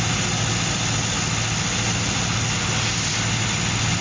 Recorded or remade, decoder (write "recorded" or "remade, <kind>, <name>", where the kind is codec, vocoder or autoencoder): recorded